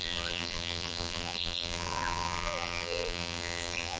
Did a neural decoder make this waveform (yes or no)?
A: yes